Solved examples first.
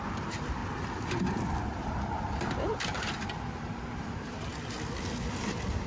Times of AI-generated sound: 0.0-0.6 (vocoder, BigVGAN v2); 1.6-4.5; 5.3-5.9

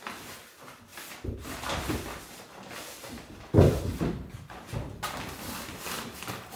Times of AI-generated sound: 0.9-4.9 (vocoder, BigVGAN v2)

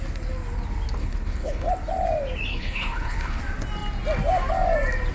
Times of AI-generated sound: 1.0-1.7 (codec, HILCodec); 2.5-3.4

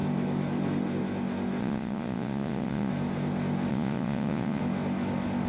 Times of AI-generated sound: 1.6-2.9 (vocoder, Vocos); 3.7-4.6

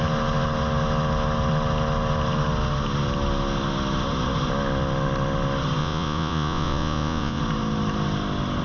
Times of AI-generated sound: 5.8-7.4 (vocoder, Vocos)

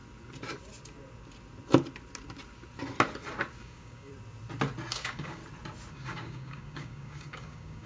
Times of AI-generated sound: 3.6-4.1 (codec, DAC); 4.9-5.4; 5.9-7.9

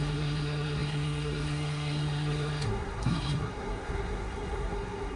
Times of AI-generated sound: 0.0-5.2 (codec, SNAC)

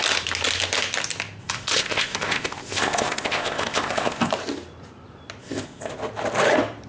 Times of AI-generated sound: 1.4-4.3 (codec, ZipCodec); 5.4-5.9